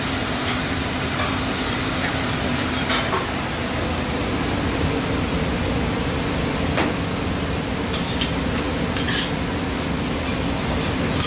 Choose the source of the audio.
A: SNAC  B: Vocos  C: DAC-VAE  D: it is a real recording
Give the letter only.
D